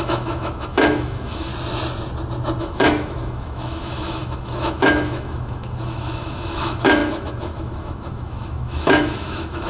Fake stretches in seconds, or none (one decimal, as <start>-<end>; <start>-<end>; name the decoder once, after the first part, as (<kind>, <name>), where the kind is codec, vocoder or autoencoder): 0.0-1.5 (autoencoder, DAC-VAE); 2.6-9.7